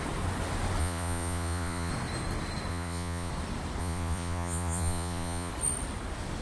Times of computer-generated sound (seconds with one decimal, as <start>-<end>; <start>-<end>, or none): 0.8-1.9; 2.7-3.3; 3.8-5.5